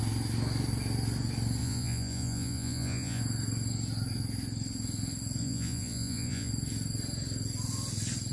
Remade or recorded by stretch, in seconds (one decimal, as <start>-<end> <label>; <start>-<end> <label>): 0.0-1.6 recorded; 1.6-3.2 remade; 3.2-5.4 recorded; 5.4-6.5 remade; 6.5-8.3 recorded